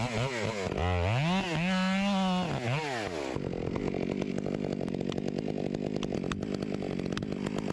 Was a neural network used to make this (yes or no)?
no